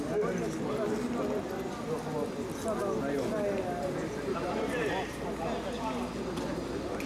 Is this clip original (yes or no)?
yes